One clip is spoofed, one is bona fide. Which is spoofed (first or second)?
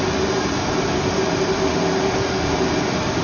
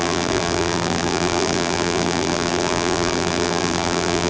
second